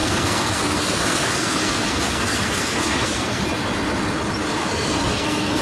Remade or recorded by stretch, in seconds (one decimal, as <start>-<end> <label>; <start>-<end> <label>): 0.0-3.4 remade; 3.4-4.6 recorded; 4.6-5.6 remade